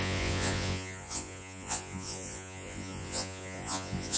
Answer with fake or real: fake